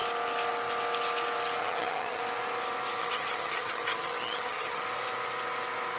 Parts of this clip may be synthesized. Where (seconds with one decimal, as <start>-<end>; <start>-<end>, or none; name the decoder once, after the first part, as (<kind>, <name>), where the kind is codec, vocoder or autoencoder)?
1.6-2.2 (vocoder, HiFi-GAN); 3.0-4.8